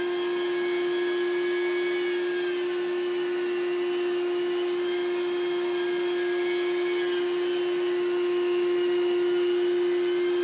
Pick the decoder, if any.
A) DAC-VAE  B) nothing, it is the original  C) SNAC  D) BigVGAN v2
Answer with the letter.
B